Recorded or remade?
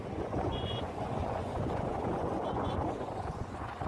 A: remade